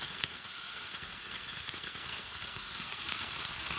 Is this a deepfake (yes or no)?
yes